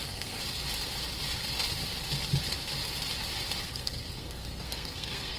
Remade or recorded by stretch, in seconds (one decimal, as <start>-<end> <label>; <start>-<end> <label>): 0.0-0.4 remade; 0.4-3.6 recorded; 3.6-5.4 remade